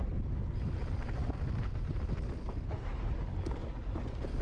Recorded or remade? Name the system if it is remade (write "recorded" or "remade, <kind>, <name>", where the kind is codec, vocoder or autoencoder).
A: recorded